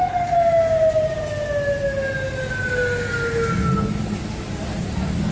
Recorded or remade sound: recorded